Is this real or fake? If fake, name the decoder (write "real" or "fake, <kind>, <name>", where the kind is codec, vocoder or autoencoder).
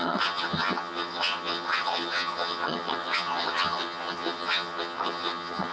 fake, vocoder, HiFi-GAN